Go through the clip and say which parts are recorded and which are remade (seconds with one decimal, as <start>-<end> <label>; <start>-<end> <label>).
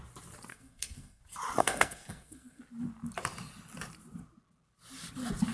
0.0-0.5 recorded; 0.5-1.2 remade; 1.2-1.6 recorded; 1.6-2.6 remade; 2.6-5.5 recorded